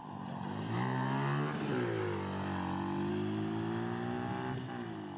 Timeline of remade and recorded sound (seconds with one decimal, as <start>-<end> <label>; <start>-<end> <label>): 0.0-5.2 recorded